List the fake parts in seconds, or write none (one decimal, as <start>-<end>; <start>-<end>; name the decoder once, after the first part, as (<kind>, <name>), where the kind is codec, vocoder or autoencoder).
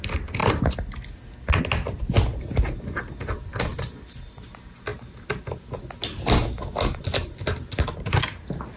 none